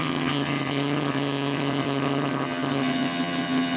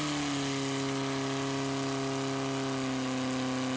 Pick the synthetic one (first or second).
first